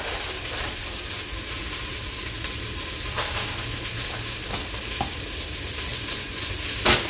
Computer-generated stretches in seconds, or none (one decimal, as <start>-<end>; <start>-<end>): 5.9-6.5